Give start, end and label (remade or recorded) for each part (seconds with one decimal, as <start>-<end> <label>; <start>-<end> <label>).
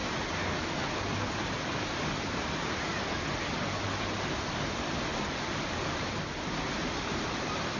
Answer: 0.0-7.8 recorded